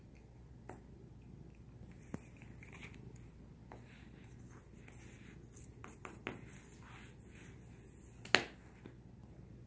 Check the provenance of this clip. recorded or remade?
recorded